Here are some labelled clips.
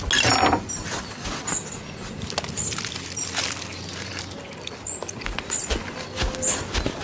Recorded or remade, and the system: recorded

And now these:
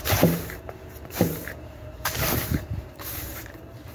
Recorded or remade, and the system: remade, vocoder, BigVGAN v2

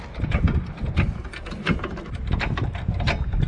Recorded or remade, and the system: recorded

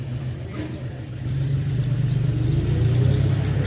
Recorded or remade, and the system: recorded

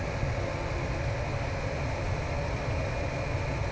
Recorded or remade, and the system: recorded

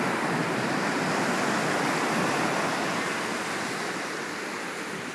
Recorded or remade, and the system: recorded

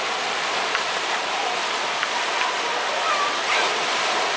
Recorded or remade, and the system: remade, vocoder, BigVGAN v2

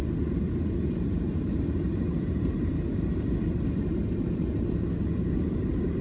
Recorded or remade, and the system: remade, vocoder, BigVGAN v2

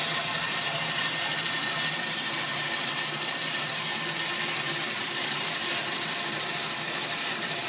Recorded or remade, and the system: remade, vocoder, BigVGAN v2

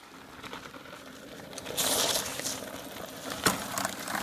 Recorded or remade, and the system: recorded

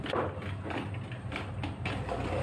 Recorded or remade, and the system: recorded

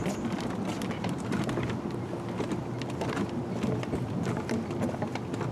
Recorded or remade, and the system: recorded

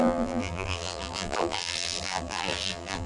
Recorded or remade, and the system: remade, vocoder, BigVGAN v2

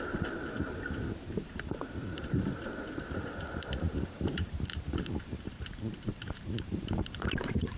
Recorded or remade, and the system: remade, vocoder, BigVGAN v2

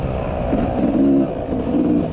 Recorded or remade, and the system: recorded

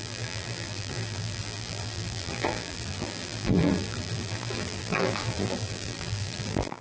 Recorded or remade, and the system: remade, vocoder, BigVGAN v2